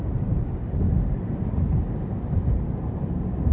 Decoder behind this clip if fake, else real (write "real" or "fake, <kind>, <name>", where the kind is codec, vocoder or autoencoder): fake, vocoder, BigVGAN v2